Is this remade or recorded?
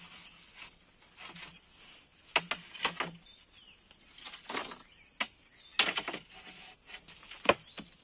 recorded